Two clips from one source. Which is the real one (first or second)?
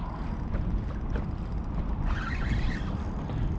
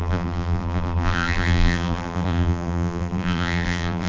first